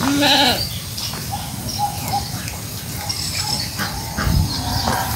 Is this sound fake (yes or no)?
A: no